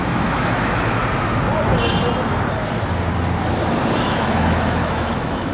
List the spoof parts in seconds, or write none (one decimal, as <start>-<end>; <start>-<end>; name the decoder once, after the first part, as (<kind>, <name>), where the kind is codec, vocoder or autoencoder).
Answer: 0.0-1.0 (autoencoder, DAC-VAE); 4.0-5.5

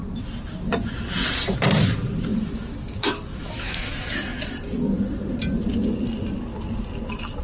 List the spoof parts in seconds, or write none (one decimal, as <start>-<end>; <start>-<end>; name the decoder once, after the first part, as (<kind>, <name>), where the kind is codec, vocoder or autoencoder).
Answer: 2.3-3.9 (autoencoder, DAC-VAE)

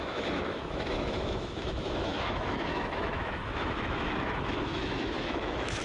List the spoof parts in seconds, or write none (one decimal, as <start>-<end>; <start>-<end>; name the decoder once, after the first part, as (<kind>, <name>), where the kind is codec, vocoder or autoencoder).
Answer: 0.0-5.8 (autoencoder, DAC-VAE)

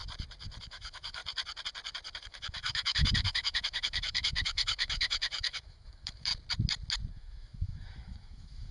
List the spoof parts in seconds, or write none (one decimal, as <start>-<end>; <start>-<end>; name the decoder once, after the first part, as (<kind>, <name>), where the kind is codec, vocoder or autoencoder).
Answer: 0.6-1.2 (autoencoder, DAC-VAE); 2.2-6.3; 7.1-8.7

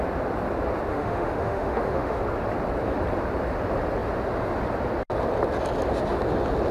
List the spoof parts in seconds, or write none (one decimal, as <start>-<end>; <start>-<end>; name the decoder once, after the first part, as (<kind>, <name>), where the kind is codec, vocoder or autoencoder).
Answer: 0.9-2.2 (autoencoder, DAC-VAE)

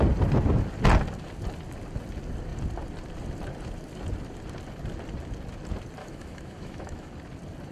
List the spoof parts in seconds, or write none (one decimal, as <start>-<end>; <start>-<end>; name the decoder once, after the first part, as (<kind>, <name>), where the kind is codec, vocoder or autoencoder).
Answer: 6.0-7.1 (autoencoder, DAC-VAE)